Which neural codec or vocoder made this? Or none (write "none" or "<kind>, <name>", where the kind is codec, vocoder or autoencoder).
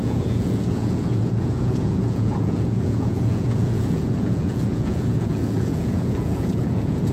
vocoder, Vocos